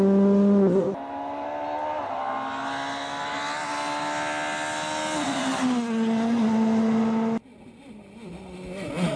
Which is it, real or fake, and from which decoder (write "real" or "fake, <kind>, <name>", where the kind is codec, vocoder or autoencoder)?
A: real